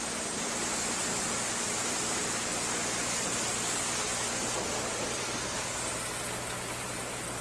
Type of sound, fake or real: real